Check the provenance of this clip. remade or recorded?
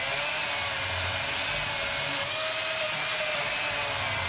recorded